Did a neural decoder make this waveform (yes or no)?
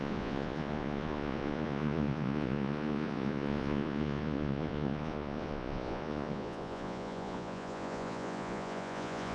yes